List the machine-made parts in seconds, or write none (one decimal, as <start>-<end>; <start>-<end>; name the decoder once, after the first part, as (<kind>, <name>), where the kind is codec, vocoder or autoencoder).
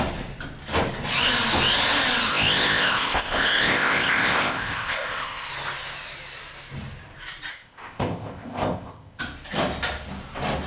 2.3-5.5 (codec, ZipCodec); 7.5-9.2